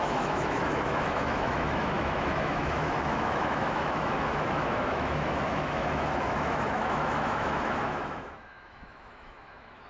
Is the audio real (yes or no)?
no